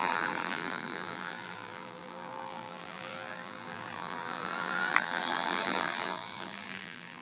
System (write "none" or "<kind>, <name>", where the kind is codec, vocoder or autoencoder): vocoder, BigVGAN v2